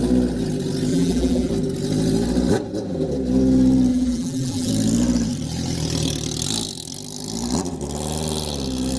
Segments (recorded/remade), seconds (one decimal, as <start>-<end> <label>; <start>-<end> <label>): 0.0-0.9 recorded; 0.9-1.5 remade; 1.5-3.9 recorded; 3.9-4.7 remade; 4.7-9.0 recorded